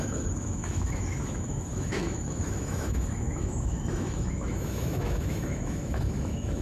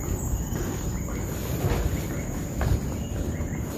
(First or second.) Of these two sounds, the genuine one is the second